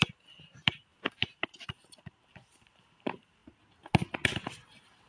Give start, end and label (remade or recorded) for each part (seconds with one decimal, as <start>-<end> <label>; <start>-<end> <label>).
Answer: 0.0-3.4 remade; 3.4-4.5 recorded; 4.5-5.1 remade